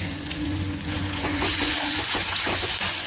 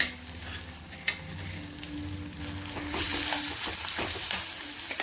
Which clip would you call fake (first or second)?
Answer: first